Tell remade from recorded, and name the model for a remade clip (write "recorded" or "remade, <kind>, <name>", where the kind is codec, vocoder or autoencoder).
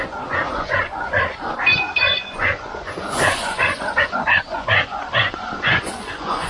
remade, vocoder, Vocos